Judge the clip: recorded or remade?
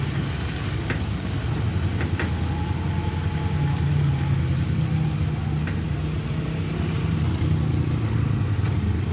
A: recorded